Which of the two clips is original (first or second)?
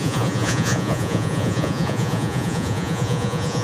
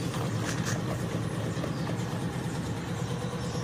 second